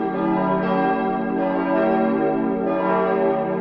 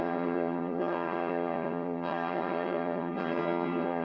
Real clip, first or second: first